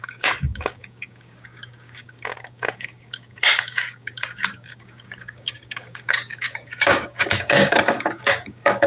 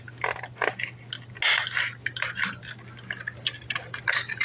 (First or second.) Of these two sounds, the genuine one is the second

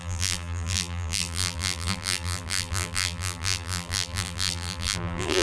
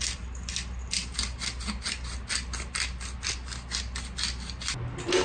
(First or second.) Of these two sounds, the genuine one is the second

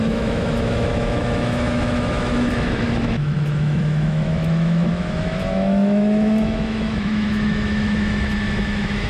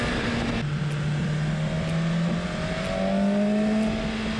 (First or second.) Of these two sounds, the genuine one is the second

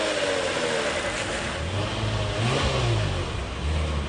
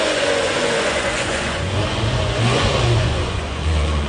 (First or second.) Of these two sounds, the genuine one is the first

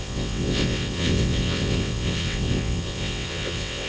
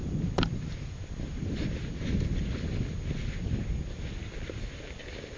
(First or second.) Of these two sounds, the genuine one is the second